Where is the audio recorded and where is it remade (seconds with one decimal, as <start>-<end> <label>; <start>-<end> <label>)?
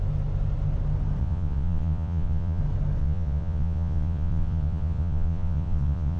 0.0-1.2 recorded; 1.2-2.6 remade; 2.6-3.0 recorded; 3.0-6.2 remade